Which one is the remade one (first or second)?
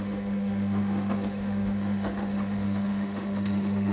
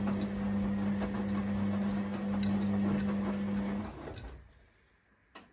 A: first